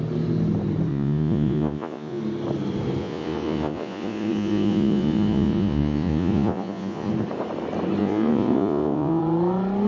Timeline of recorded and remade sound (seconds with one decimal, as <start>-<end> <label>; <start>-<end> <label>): 0.0-0.9 recorded; 0.9-2.2 remade; 2.2-3.0 recorded; 3.0-7.1 remade; 7.1-8.0 recorded; 8.0-9.2 remade; 9.2-9.9 recorded